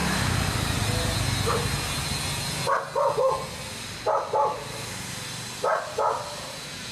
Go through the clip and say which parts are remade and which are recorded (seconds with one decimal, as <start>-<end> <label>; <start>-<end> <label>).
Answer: 0.0-0.8 remade; 0.8-6.9 recorded